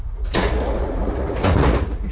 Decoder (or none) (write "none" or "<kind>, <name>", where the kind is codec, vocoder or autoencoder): vocoder, Vocos